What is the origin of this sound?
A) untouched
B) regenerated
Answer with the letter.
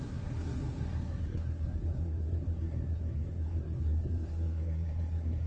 B